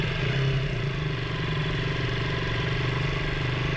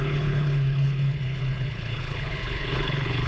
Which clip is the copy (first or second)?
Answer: second